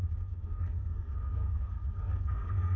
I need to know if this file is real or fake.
fake